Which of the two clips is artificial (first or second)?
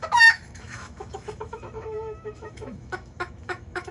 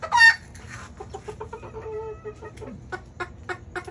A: first